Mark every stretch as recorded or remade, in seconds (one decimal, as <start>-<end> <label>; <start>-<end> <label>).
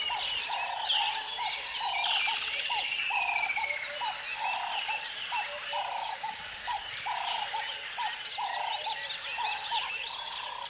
0.0-6.0 recorded; 6.0-6.9 remade; 6.9-10.7 recorded